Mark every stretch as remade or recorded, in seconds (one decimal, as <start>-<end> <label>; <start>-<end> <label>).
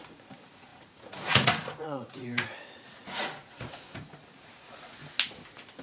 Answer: 0.0-5.0 remade; 5.0-5.8 recorded